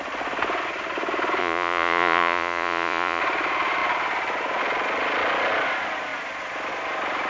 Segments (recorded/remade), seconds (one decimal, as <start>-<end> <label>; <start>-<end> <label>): 0.0-1.4 recorded; 1.4-3.2 remade; 3.2-7.3 recorded